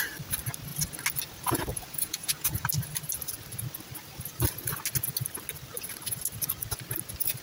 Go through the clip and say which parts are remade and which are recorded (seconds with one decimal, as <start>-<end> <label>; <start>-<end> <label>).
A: 0.0-1.7 recorded; 1.7-2.7 remade; 2.7-7.4 recorded